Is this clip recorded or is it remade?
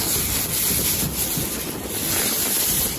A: recorded